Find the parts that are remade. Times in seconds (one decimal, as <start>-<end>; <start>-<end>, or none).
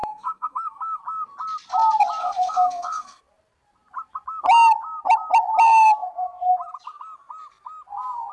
0.0-1.0; 2.2-3.2